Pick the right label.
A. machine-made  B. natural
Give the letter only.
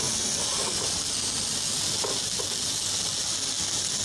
B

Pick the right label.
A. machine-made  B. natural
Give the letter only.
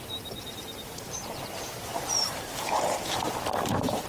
A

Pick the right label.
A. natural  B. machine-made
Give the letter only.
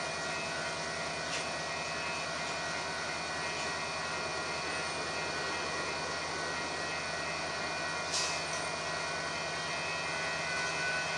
A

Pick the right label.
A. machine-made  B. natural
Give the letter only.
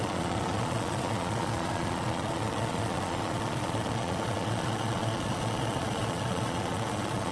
A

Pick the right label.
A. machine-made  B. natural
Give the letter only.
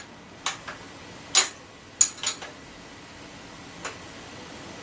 B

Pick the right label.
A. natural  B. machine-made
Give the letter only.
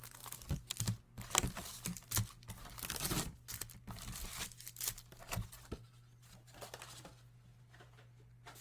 A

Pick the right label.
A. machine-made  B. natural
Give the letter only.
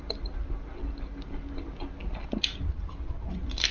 B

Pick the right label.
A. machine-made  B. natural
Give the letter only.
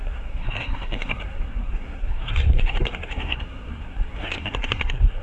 A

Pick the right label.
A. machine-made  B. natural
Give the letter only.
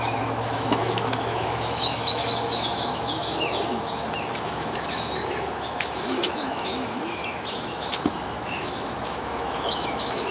A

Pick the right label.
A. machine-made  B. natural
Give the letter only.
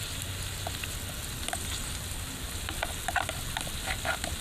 B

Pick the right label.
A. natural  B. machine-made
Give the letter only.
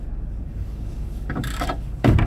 B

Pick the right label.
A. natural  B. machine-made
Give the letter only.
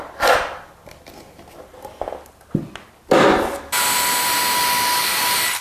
A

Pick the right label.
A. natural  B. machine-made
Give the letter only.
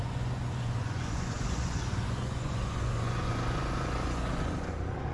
B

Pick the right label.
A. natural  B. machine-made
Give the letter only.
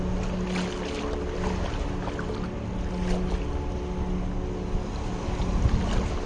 A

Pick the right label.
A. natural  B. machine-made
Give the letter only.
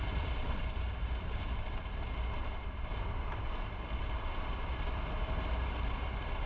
A